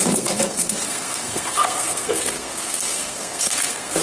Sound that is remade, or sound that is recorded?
remade